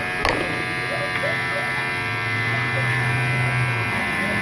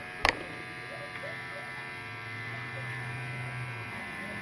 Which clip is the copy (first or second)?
second